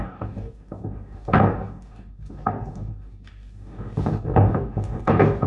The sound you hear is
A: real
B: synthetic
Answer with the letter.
B